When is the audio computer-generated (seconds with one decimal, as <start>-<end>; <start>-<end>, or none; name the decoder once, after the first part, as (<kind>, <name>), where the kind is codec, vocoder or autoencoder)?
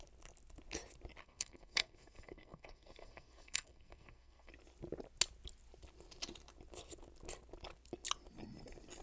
1.2-4.5 (codec, SNAC)